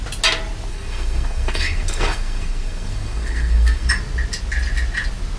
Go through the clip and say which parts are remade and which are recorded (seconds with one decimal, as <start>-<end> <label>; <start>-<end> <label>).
0.0-0.7 recorded; 0.7-3.9 remade; 3.9-5.4 recorded